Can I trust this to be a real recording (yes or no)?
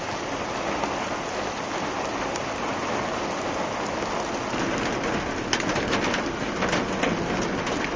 yes